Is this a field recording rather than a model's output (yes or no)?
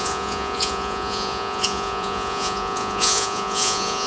no